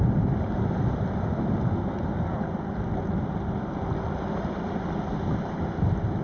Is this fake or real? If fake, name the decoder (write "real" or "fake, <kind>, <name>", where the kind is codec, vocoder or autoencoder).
real